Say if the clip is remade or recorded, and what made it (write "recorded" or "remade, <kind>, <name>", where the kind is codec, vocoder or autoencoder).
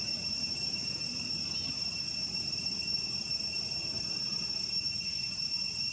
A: remade, vocoder, BigVGAN v2